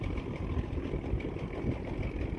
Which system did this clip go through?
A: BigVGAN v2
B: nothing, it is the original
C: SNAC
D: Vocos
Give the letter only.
B